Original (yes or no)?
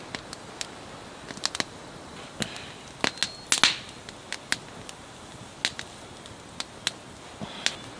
yes